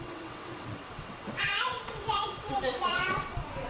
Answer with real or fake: fake